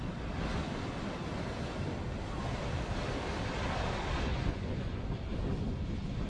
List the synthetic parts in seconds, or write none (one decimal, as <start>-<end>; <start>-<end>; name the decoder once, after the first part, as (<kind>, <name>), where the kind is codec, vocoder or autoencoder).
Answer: 4.3-5.0 (vocoder, Vocos)